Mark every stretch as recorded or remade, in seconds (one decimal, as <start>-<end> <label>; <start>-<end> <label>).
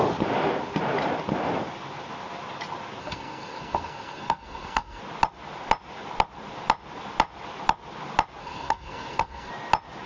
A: 0.0-3.0 recorded; 3.0-5.0 remade; 5.0-8.4 recorded; 8.4-9.5 remade; 9.5-10.1 recorded